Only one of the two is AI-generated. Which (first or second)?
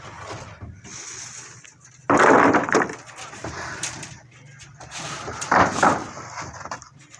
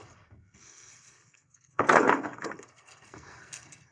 second